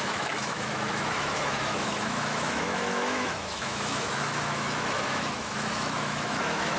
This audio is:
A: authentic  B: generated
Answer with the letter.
B